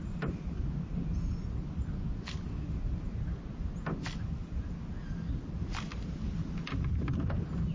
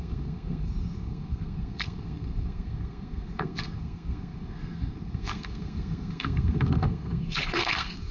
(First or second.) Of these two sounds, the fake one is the second